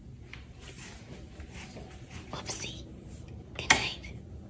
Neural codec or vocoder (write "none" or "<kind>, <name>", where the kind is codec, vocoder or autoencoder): none